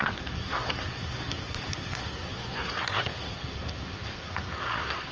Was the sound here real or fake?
fake